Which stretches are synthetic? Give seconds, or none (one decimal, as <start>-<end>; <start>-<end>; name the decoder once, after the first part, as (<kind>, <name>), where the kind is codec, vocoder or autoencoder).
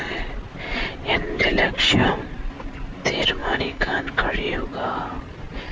3.4-4.1 (autoencoder, DAC-VAE)